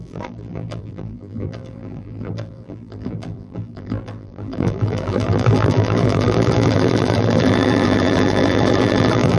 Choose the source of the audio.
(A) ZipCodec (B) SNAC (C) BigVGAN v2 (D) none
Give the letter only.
C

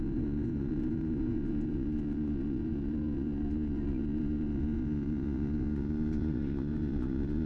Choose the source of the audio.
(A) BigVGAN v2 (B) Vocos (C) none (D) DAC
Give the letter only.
B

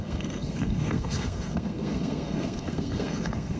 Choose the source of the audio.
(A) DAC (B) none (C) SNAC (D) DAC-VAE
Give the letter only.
C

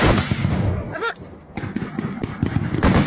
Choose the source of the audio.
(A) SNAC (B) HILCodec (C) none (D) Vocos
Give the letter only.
C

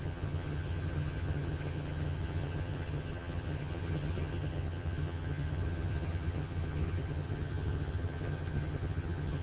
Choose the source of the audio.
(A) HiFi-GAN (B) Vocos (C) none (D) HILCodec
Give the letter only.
A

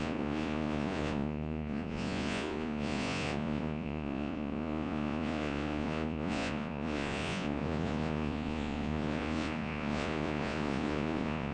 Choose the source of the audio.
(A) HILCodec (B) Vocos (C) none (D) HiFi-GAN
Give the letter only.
B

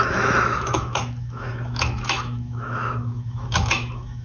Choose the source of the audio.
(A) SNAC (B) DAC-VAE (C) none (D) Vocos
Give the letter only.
B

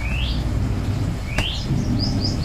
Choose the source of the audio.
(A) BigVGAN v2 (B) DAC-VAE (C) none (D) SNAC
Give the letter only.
C